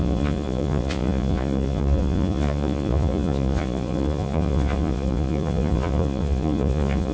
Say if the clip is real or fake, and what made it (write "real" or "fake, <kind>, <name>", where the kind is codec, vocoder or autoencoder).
fake, vocoder, Vocos